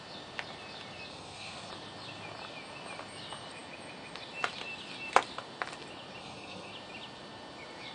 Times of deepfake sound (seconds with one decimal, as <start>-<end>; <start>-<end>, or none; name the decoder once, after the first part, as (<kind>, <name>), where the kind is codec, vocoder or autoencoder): 1.1-1.7 (codec, SNAC); 6.2-6.7

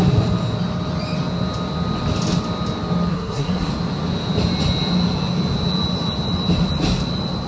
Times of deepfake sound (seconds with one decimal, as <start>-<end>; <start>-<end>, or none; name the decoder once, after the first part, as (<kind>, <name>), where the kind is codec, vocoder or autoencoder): 3.1-3.7 (codec, SNAC)